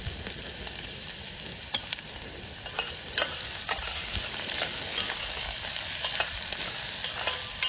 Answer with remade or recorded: recorded